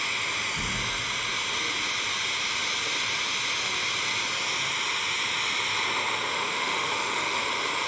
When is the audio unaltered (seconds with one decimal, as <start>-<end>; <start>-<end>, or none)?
0.0-6.3; 7.4-7.9